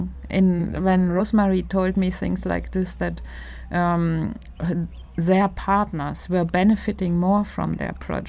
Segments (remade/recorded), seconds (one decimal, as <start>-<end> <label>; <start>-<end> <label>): 0.0-0.6 recorded; 0.6-1.2 remade; 1.2-8.3 recorded